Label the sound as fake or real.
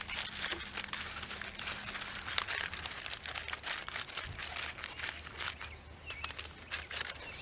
real